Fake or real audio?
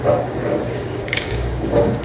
fake